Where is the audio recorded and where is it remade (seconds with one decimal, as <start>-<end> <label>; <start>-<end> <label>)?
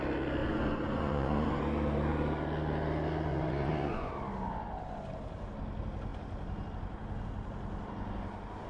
0.0-0.4 recorded; 0.4-1.6 remade; 1.6-3.3 recorded; 3.3-4.1 remade; 4.1-8.7 recorded